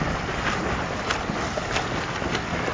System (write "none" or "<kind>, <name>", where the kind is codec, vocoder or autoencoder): none